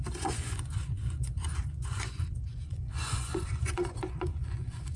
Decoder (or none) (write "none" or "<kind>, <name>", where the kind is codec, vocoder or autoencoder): vocoder, Vocos